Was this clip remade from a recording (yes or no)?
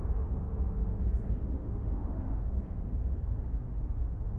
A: yes